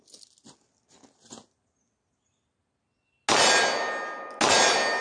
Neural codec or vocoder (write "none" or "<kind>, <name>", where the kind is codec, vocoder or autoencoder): none